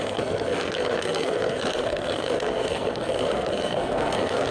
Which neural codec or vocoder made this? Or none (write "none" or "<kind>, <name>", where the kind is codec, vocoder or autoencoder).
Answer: codec, SNAC